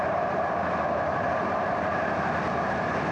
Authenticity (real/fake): fake